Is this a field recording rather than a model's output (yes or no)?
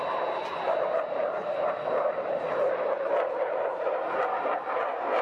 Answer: yes